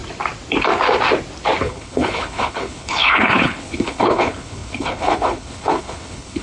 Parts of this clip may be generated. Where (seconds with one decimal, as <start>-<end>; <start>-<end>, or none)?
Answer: 1.6-6.4